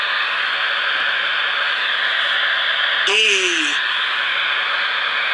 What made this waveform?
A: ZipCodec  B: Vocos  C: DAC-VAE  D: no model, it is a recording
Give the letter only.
D